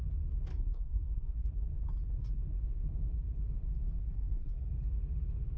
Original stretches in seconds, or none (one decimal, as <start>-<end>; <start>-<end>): 0.0-0.5; 1.5-4.0; 4.7-5.6